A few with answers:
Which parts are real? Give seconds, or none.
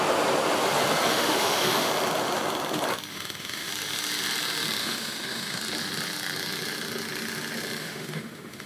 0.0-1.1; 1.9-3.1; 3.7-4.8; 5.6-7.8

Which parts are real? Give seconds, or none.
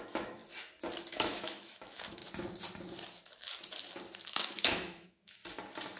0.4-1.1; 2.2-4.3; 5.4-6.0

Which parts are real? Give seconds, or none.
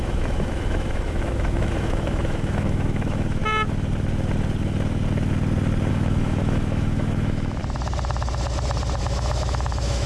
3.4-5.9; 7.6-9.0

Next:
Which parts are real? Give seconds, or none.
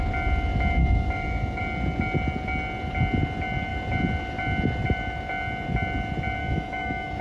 0.0-0.8; 1.6-6.4